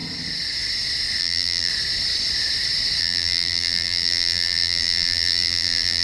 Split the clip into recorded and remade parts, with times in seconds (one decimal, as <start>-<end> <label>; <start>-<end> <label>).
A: 0.0-1.2 recorded; 1.2-1.7 remade; 1.7-3.0 recorded; 3.0-6.0 remade